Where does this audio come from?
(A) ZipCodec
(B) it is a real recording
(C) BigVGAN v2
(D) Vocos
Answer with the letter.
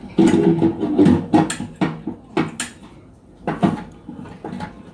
B